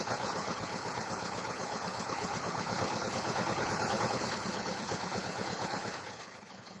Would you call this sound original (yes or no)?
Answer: no